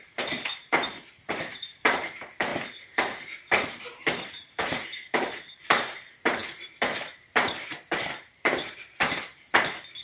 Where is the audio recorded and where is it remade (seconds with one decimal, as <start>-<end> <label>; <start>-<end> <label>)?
0.0-10.0 remade